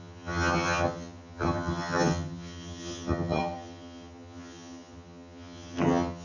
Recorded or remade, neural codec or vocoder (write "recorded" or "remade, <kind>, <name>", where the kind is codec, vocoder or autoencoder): remade, vocoder, HiFi-GAN